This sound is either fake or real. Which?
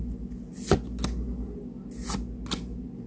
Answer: real